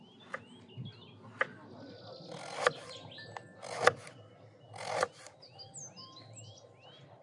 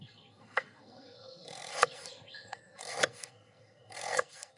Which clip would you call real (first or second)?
first